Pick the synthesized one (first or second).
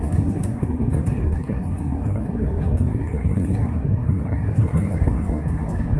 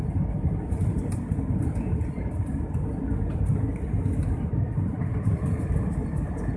first